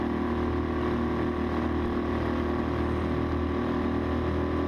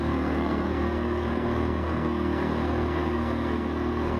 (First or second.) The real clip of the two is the first